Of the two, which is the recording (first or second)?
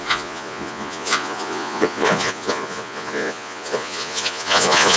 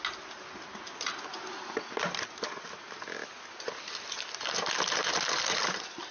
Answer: second